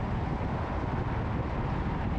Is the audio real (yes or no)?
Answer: yes